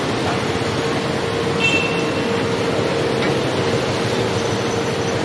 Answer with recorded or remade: recorded